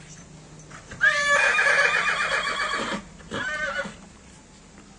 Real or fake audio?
real